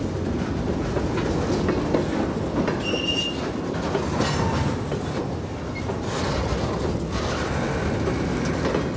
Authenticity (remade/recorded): recorded